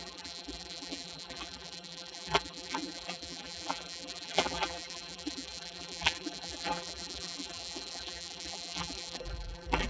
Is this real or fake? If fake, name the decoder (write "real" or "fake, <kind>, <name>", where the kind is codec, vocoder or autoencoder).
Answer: fake, vocoder, BigVGAN v2